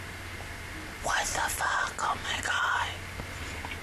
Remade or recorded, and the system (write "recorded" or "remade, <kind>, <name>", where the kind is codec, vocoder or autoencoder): recorded